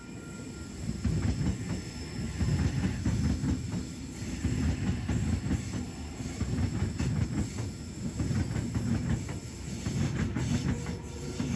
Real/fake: real